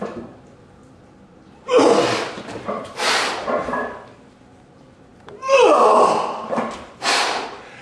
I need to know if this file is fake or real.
fake